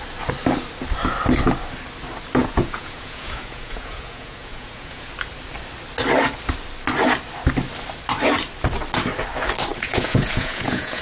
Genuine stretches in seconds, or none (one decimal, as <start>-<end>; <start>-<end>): 0.0-2.4; 5.1-9.7